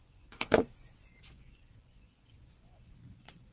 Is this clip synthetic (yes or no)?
yes